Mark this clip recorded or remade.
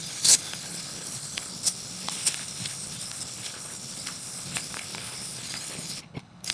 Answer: remade